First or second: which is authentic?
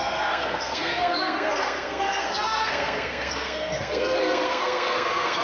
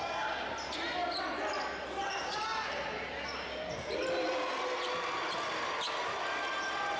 second